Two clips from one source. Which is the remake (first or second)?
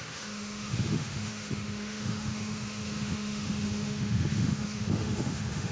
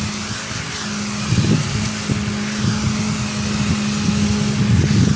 first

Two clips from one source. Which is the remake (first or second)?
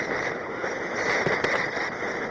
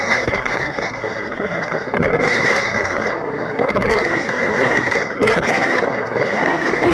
second